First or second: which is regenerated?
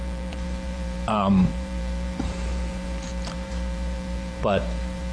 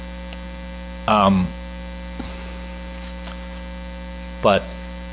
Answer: first